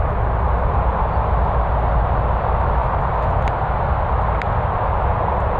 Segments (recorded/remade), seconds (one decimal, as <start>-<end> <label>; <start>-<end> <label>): 0.0-5.6 recorded